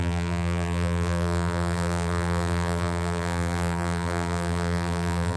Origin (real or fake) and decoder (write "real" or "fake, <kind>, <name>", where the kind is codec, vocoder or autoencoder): fake, vocoder, BigVGAN v2